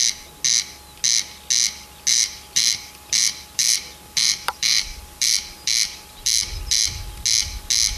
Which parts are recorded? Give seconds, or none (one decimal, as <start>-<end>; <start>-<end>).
0.0-2.1; 6.8-8.0

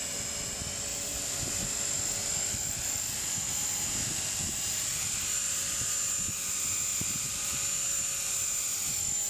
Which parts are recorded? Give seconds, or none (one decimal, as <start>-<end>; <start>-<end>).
0.0-4.9; 5.9-9.3

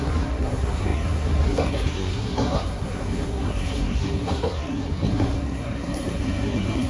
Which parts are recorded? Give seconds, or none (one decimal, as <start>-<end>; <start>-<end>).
none